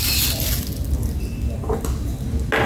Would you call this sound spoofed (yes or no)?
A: no